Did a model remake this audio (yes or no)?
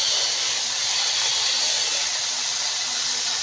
no